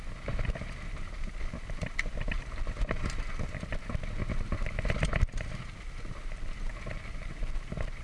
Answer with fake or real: real